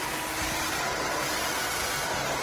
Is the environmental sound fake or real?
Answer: real